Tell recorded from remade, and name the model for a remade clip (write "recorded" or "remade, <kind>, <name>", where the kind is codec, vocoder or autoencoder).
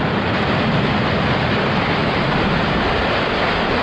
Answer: recorded